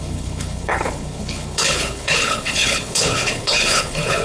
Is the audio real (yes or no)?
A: no